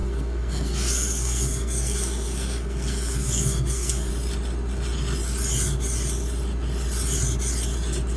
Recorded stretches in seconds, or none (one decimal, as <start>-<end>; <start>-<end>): 4.1-8.2